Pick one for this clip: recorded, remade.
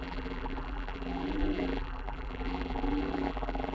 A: remade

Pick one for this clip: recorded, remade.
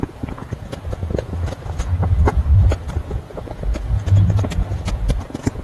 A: remade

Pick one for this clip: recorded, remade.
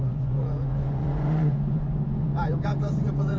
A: remade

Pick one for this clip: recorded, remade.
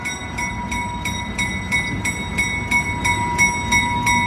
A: recorded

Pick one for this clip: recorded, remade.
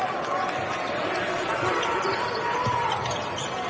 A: recorded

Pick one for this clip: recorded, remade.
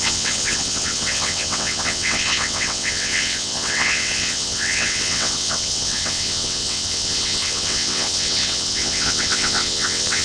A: remade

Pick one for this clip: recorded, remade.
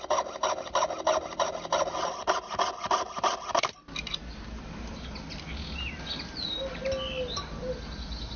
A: remade